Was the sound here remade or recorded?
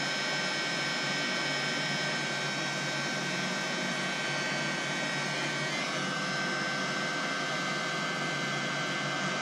recorded